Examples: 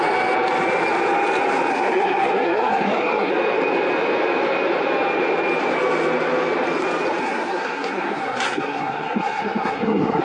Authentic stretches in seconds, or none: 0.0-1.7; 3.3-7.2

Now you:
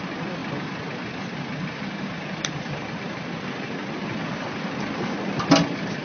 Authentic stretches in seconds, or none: 0.0-6.0

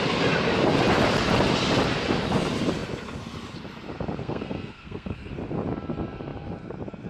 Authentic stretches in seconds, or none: 0.0-4.2; 5.3-7.1

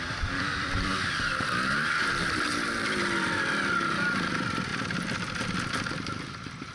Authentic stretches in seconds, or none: 4.7-5.9

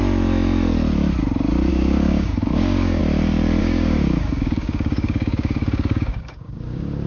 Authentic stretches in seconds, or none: 0.0-1.7; 3.0-3.6

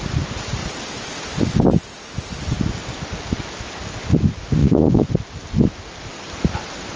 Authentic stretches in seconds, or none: 0.0-4.6; 5.1-7.0

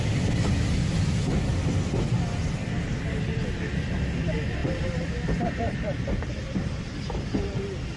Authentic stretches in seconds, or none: 0.0-8.0